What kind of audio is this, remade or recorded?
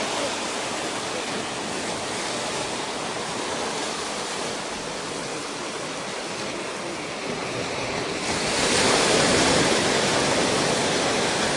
recorded